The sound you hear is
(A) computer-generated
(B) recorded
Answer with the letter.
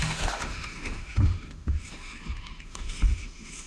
A